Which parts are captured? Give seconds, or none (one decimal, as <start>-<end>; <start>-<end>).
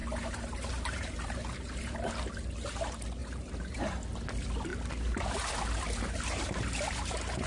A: 2.1-3.2; 3.9-7.5